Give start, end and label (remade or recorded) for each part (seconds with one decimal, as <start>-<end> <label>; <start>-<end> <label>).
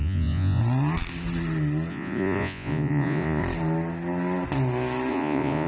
0.0-0.6 remade; 0.6-1.9 recorded; 1.9-3.4 remade; 3.4-5.1 recorded; 5.1-5.7 remade